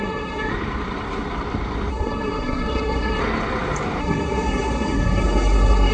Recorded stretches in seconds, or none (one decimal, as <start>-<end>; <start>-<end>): 0.5-1.9; 3.2-4.0